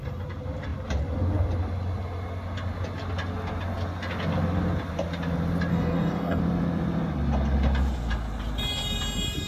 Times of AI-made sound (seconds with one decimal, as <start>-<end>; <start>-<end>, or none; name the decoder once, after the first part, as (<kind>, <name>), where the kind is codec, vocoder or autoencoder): 5.7-6.4 (codec, DAC)